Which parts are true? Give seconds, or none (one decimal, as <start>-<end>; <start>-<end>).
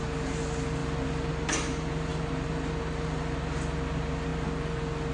0.0-5.1